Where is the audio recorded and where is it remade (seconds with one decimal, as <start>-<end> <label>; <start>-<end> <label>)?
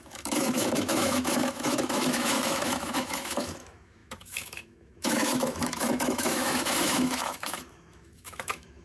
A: 0.0-8.8 remade